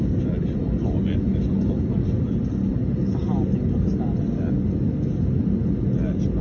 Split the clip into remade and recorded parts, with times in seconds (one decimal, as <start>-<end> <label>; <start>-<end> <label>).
0.0-6.4 recorded